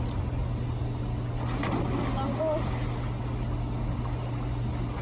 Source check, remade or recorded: recorded